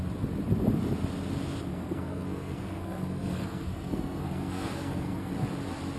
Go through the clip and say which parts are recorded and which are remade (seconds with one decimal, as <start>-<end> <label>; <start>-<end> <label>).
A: 0.0-1.7 recorded; 1.7-5.3 remade; 5.3-6.0 recorded